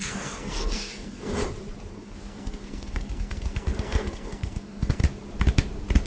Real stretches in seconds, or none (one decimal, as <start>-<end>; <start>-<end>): 1.3-1.9; 5.0-6.1